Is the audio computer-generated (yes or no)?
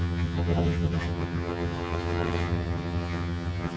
yes